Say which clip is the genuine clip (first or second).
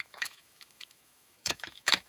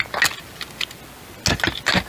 second